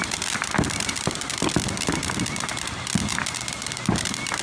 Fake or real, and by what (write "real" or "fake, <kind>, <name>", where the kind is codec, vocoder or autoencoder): real